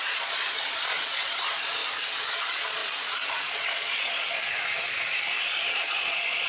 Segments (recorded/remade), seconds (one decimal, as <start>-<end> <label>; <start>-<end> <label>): 0.0-1.8 remade; 1.8-2.3 recorded; 2.3-2.8 remade; 2.8-3.3 recorded; 3.3-4.4 remade; 4.4-5.7 recorded; 5.7-6.5 remade